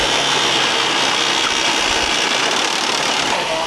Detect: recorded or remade recorded